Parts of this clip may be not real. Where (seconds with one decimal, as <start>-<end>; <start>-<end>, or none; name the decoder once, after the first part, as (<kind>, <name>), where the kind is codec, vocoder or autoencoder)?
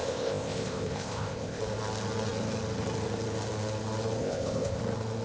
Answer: 0.0-1.6 (codec, ZipCodec); 4.2-4.8